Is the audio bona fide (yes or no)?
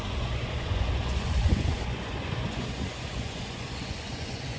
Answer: no